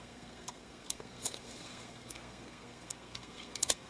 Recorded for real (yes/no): no